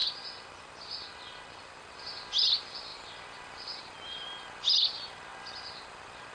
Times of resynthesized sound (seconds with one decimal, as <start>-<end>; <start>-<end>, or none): none